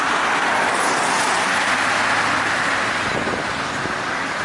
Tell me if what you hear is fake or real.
real